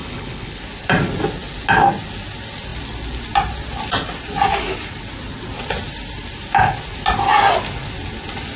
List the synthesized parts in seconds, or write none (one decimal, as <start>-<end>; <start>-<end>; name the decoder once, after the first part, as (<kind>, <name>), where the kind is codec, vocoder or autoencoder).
0.0-0.6 (codec, HILCodec)